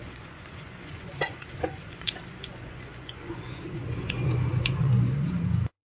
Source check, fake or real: fake